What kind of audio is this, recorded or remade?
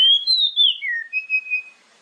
remade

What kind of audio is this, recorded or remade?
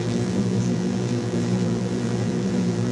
remade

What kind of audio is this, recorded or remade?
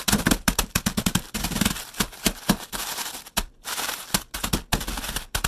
remade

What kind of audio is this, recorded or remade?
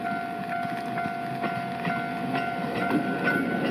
recorded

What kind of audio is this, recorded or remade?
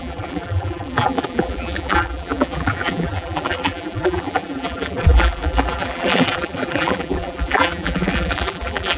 remade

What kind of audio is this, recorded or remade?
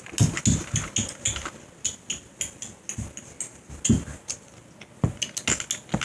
recorded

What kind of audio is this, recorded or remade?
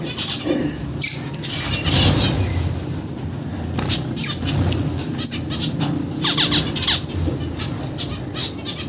recorded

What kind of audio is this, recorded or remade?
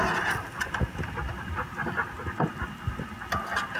recorded